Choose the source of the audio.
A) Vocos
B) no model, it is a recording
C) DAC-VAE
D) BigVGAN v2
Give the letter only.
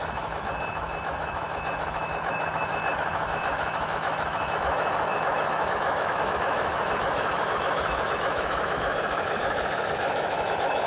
C